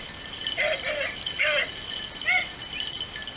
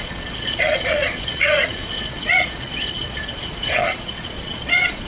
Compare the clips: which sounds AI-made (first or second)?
second